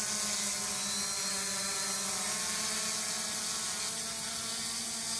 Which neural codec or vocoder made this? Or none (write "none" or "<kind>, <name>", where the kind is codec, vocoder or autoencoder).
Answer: none